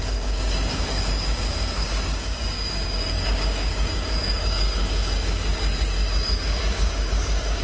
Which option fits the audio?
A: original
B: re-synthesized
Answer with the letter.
B